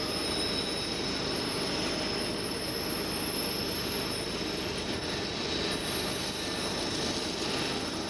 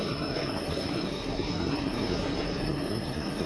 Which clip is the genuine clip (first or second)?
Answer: first